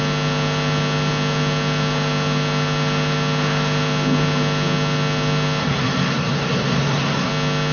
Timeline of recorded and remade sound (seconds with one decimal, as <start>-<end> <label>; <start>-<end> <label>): 0.0-5.6 recorded; 5.6-7.3 remade; 7.3-7.7 recorded